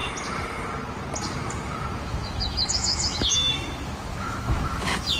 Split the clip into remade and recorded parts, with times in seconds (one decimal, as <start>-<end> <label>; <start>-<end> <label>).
0.0-2.0 recorded; 2.0-5.2 remade